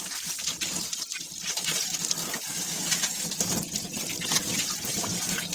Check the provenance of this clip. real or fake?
real